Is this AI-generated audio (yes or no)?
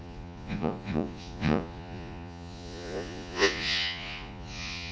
yes